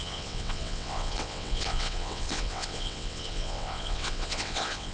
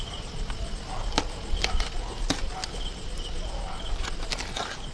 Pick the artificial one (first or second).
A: first